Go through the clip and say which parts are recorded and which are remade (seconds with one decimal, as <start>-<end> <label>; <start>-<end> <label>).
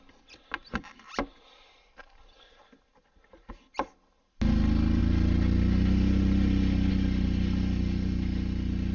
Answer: 0.0-8.9 recorded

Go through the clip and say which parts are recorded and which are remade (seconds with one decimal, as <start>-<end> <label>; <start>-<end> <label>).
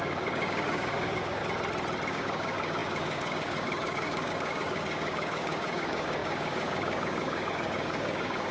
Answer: 0.0-1.4 remade; 1.4-2.1 recorded; 2.1-8.5 remade